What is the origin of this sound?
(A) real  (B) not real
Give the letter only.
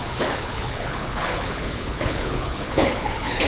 B